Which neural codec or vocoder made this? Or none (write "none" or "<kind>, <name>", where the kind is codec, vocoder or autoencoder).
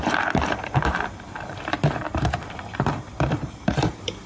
vocoder, BigVGAN v2